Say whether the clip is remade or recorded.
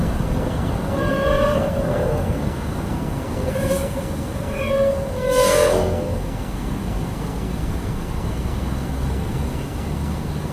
remade